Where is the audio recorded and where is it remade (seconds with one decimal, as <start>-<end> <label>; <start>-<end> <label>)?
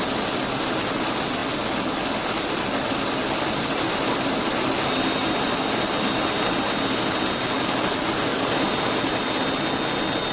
0.0-10.3 recorded